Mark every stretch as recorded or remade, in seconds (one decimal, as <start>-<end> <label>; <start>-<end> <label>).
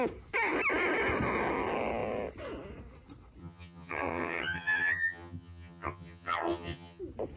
0.0-3.4 recorded; 3.4-7.0 remade; 7.0-7.4 recorded